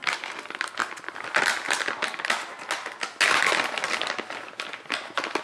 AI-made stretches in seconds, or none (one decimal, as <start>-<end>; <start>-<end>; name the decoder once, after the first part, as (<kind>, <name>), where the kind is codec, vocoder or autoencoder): none